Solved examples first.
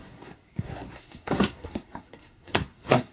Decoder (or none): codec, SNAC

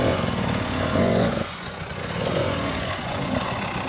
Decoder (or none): vocoder, Vocos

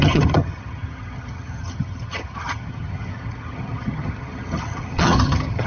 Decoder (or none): vocoder, HiFi-GAN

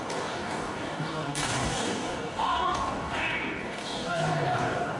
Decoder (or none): codec, DAC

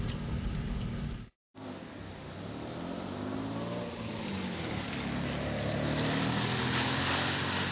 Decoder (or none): none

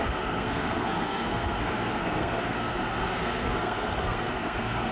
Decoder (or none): codec, SNAC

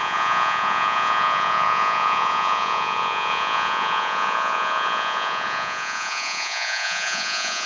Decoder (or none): vocoder, Vocos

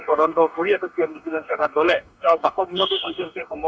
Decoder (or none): codec, DAC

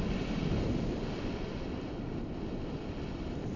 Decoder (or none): none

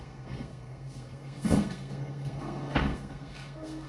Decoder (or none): codec, SNAC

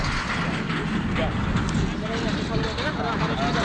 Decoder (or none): none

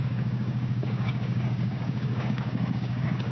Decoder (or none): codec, DAC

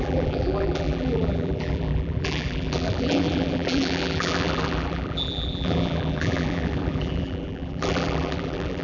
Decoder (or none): vocoder, BigVGAN v2